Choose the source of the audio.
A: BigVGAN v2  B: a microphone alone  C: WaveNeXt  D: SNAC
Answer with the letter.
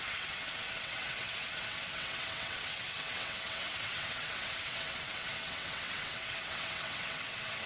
C